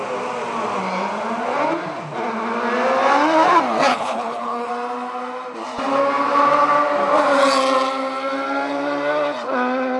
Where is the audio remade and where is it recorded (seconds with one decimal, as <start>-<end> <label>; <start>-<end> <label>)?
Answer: 0.0-3.9 recorded; 3.9-4.7 remade; 4.7-10.0 recorded